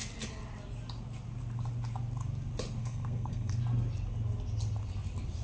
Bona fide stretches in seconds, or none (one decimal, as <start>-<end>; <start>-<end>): 0.0-2.8; 3.6-5.4